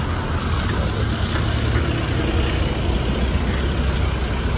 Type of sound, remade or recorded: recorded